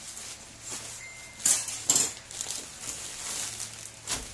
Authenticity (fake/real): real